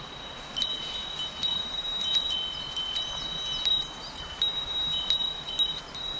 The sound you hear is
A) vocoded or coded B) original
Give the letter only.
B